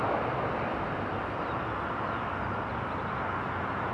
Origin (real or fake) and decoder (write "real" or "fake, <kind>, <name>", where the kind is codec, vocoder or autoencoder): real